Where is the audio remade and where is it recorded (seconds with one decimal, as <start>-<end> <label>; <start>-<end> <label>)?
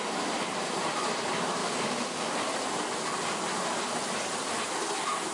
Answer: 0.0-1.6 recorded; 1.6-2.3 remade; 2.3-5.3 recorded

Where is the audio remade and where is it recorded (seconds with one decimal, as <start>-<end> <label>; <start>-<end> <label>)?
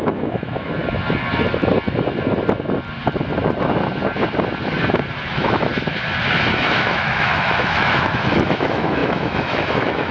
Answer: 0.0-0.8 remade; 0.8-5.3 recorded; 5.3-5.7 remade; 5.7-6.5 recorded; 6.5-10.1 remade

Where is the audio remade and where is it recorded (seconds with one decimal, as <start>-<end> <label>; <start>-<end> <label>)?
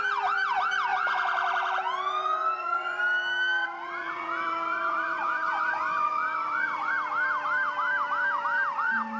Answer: 0.0-0.9 recorded; 0.9-3.0 remade; 3.0-3.6 recorded; 3.6-6.9 remade; 6.9-9.2 recorded